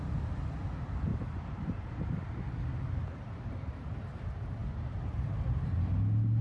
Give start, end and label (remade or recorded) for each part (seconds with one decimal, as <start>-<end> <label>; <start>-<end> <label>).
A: 0.0-1.1 recorded; 1.1-2.0 remade; 2.0-3.0 recorded; 3.0-3.9 remade; 3.9-6.4 recorded